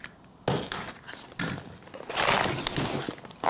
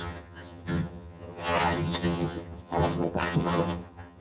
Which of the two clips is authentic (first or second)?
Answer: first